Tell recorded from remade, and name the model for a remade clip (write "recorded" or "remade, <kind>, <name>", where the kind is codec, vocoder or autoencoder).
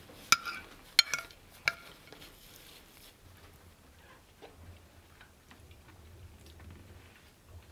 recorded